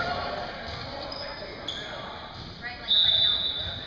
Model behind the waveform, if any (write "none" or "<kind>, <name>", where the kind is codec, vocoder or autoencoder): none